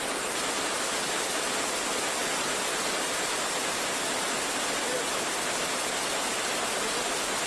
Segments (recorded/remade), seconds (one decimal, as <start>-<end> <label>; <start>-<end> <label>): 0.0-7.5 recorded